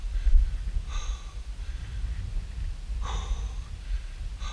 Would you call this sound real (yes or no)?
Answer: yes